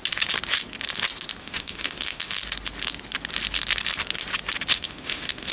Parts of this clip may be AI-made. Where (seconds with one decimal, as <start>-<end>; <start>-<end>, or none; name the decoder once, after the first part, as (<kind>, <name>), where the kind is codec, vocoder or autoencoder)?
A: 1.4-2.4 (autoencoder, DAC-VAE); 4.7-5.5